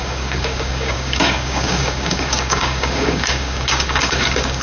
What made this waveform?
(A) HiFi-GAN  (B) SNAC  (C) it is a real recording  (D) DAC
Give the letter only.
D